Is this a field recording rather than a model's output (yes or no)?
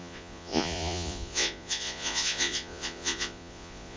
no